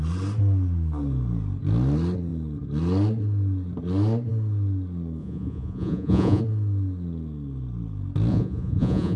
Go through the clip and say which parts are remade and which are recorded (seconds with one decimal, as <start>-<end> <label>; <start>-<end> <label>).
0.0-5.2 recorded; 5.2-6.4 remade; 6.4-8.3 recorded; 8.3-9.2 remade